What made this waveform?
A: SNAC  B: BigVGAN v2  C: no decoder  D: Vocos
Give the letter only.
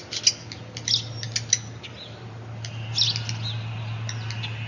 C